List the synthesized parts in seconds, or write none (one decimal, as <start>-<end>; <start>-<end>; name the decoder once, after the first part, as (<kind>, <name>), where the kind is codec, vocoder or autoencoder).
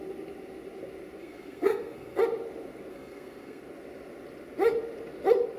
1.2-2.2 (codec, SNAC); 2.9-3.6